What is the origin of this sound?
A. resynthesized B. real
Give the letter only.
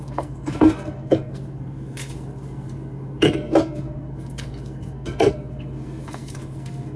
A